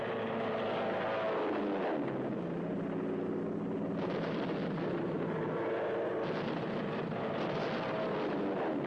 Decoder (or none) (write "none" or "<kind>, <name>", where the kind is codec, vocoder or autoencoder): none